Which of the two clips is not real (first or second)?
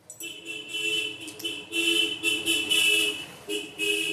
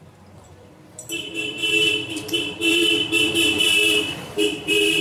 second